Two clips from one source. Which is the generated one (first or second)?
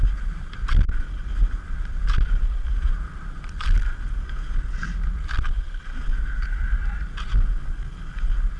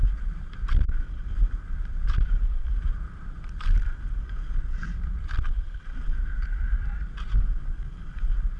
second